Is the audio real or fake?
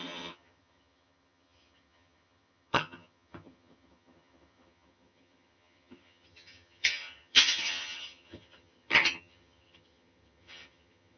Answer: fake